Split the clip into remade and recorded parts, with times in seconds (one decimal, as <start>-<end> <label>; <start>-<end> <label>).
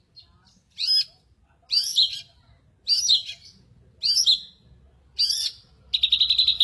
0.0-6.6 recorded